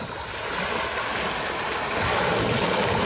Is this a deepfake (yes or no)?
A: no